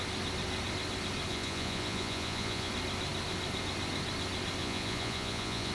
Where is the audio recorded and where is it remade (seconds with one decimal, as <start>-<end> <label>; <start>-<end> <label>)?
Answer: 0.0-1.3 recorded; 1.3-2.7 remade; 2.7-4.6 recorded; 4.6-5.7 remade